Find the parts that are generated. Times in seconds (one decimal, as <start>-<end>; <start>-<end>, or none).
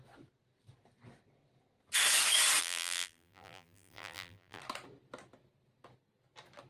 2.6-4.6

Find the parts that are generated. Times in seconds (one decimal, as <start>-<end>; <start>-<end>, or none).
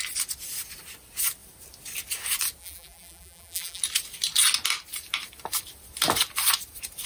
2.6-3.8